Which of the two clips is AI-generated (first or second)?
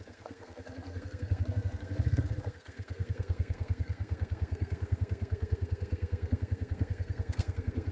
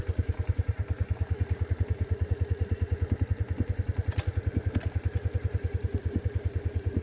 first